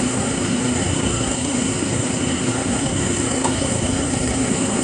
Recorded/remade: remade